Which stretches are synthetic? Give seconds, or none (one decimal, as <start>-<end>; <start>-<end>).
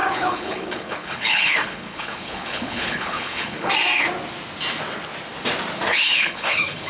0.0-3.7; 5.9-6.9